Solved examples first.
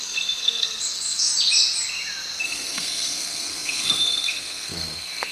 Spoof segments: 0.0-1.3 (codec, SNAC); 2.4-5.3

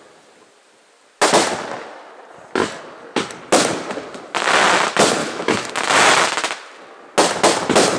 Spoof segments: 5.2-5.7 (autoencoder, DAC-VAE)

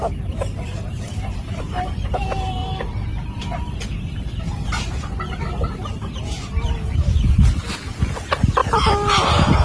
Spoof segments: 2.6-4.9 (vocoder, BigVGAN v2); 8.6-9.6

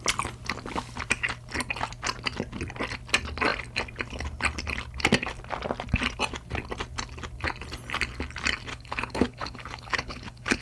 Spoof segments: 8.7-10.6 (codec, HILCodec)

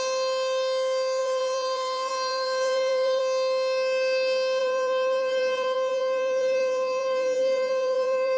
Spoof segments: 1.2-3.2 (vocoder, BigVGAN v2); 4.6-8.4